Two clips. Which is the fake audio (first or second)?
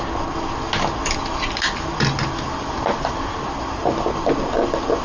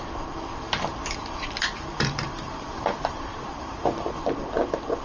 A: second